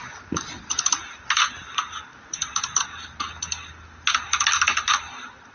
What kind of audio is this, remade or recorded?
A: recorded